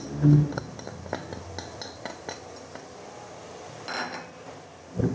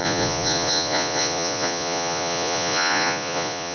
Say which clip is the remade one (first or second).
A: second